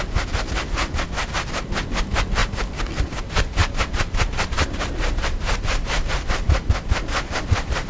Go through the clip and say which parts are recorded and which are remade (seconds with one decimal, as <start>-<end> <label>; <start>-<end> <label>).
0.0-3.6 recorded; 3.6-6.1 remade; 6.1-7.9 recorded